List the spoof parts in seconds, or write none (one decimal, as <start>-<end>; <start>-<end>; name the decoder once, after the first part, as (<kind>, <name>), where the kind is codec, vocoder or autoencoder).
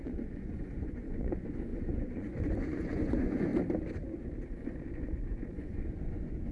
0.0-3.5 (vocoder, Vocos); 4.9-6.5